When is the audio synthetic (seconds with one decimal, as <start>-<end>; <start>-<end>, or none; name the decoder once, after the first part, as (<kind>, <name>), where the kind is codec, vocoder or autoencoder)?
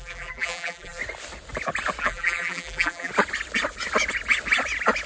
0.0-1.0 (vocoder, BigVGAN v2); 2.0-3.1